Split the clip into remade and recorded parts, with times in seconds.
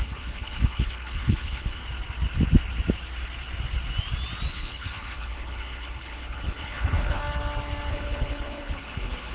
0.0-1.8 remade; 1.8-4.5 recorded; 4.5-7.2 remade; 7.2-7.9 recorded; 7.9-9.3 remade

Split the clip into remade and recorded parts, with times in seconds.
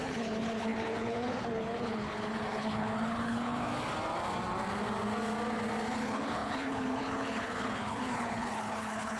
0.0-3.7 remade; 3.7-5.9 recorded; 5.9-9.2 remade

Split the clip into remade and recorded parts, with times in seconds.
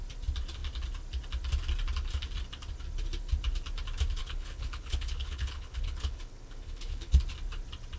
0.0-4.2 recorded; 4.2-7.2 remade; 7.2-8.0 recorded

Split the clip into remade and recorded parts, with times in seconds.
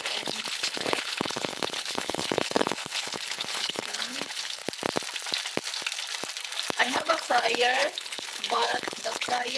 0.0-4.6 remade; 4.6-6.8 recorded; 6.8-9.6 remade